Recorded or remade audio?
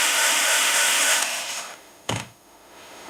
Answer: remade